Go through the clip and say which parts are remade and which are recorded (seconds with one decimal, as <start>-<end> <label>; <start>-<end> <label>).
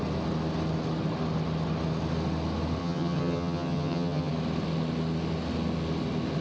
0.0-2.8 recorded; 2.8-4.3 remade; 4.3-6.4 recorded